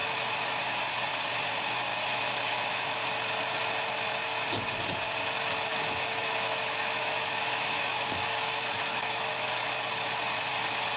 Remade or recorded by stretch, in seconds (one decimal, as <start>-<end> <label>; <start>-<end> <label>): 0.0-0.6 remade; 0.6-1.9 recorded; 1.9-3.1 remade; 3.1-5.7 recorded; 5.7-9.7 remade; 9.7-11.0 recorded